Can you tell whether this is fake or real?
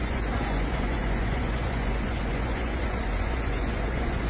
fake